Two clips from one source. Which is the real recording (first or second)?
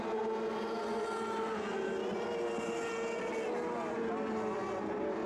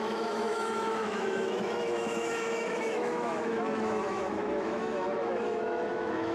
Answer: first